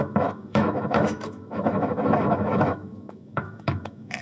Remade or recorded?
remade